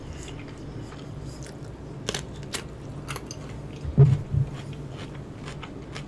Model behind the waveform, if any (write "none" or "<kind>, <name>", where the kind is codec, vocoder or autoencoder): none